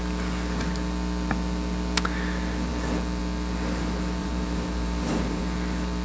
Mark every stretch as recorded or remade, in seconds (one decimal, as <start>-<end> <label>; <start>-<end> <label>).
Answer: 0.0-4.2 recorded; 4.2-5.4 remade; 5.4-6.0 recorded